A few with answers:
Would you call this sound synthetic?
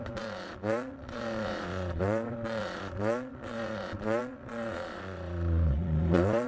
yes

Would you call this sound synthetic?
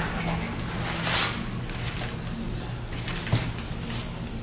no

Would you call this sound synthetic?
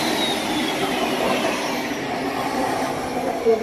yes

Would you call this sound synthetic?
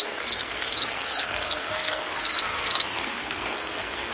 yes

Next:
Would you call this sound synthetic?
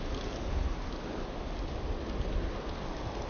no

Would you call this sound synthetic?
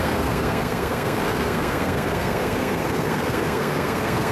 yes